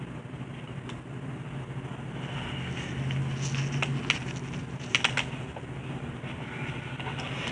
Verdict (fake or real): real